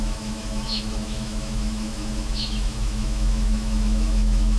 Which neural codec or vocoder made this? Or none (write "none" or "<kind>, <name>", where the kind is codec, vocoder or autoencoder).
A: autoencoder, DAC-VAE